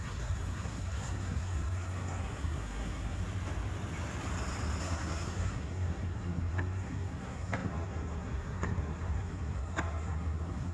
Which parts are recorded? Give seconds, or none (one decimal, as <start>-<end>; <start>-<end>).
3.2-4.8